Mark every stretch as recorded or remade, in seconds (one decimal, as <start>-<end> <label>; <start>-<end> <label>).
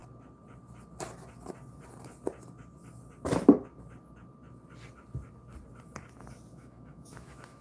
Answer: 0.0-6.5 recorded; 6.5-7.6 remade